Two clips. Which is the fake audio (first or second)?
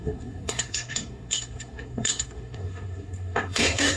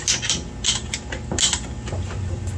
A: first